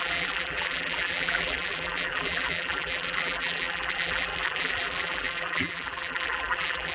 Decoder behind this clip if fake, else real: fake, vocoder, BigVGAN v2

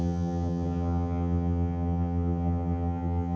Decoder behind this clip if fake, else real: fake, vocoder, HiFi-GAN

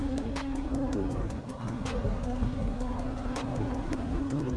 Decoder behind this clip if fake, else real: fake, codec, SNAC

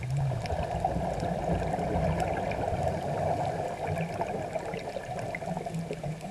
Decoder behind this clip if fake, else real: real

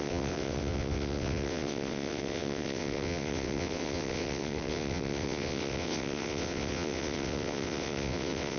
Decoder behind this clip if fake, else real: fake, vocoder, WaveNeXt